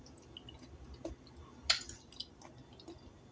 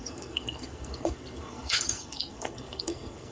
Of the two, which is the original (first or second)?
first